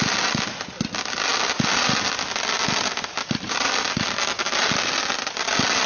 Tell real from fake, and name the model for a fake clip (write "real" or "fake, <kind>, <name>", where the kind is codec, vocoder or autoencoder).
real